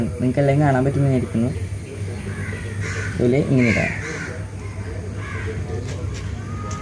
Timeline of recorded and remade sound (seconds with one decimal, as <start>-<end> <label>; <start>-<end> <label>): 0.0-6.8 recorded